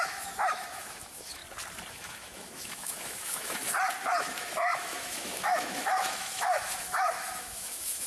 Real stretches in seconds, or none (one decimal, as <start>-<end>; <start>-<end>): 1.4-1.9; 3.6-4.2

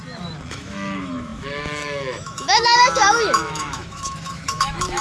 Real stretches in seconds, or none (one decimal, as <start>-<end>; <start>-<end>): 0.0-0.5

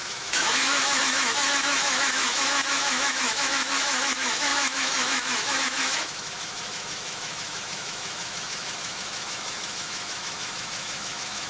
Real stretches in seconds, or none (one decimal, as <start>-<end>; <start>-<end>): none